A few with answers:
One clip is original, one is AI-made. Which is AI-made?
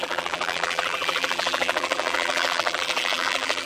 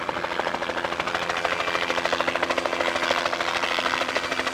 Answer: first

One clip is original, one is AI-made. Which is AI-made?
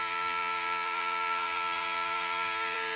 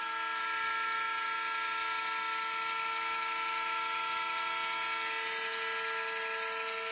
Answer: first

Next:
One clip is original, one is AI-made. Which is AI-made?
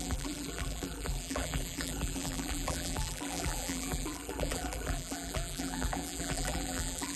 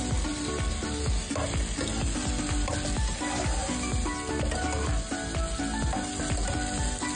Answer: first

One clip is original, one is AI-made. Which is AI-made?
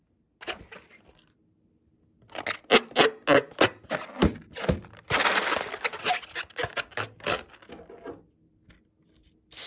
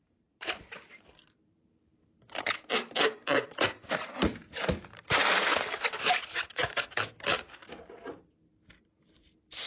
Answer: second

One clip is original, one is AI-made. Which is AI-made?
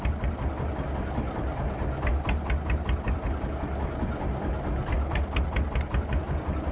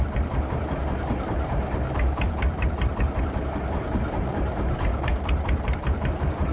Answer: second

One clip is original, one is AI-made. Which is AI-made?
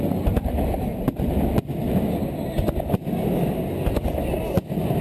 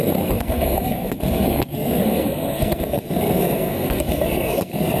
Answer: second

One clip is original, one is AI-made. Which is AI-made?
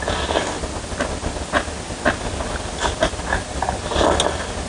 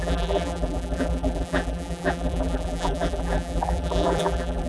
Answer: second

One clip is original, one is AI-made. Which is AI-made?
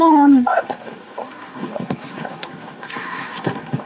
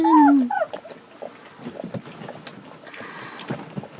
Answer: first